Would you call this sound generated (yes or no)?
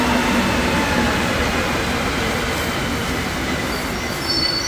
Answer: no